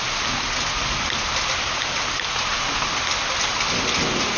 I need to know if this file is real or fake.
real